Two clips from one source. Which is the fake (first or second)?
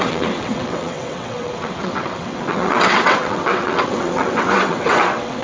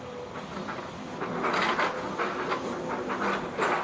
first